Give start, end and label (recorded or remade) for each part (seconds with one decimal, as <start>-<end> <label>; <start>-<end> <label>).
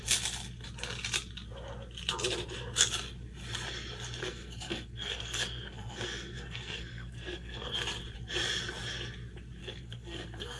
0.0-4.2 recorded; 4.2-7.7 remade; 7.7-9.6 recorded; 9.6-10.6 remade